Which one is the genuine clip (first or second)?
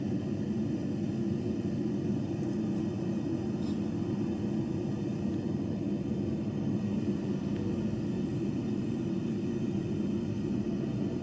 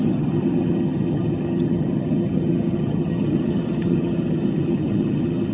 first